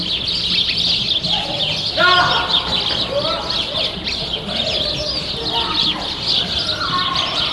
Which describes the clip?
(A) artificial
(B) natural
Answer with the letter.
B